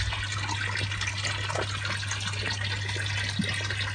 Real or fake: real